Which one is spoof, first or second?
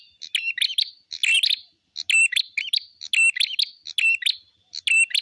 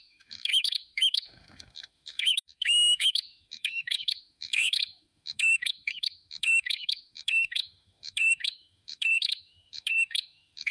second